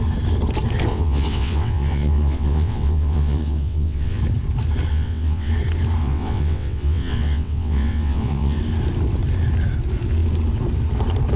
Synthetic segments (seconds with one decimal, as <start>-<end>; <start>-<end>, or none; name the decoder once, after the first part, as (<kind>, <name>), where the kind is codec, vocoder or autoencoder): 0.9-4.2 (vocoder, WaveNeXt); 4.9-5.5; 6.0-8.6